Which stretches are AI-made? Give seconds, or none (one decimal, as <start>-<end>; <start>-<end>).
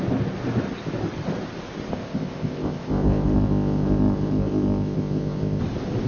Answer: 1.9-5.6